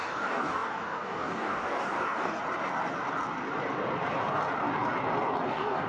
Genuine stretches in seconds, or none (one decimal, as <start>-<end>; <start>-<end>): 2.4-5.5